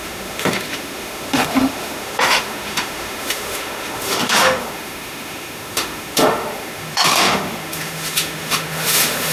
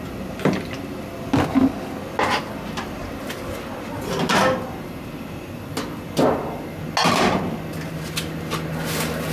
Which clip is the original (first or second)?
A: second